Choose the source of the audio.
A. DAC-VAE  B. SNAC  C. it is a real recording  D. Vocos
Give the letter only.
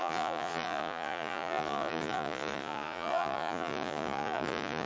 D